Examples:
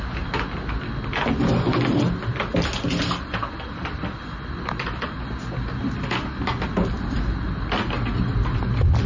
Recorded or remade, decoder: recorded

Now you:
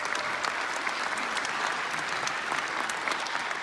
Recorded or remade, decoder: recorded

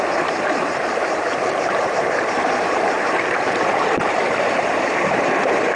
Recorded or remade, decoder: remade, vocoder, BigVGAN v2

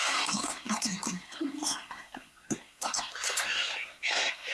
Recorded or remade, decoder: remade, codec, SNAC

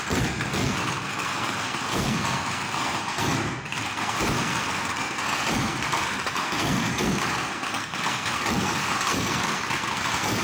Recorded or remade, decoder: remade, codec, SNAC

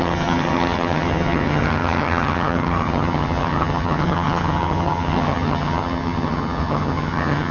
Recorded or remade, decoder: remade, vocoder, HiFi-GAN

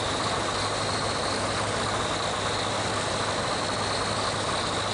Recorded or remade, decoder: recorded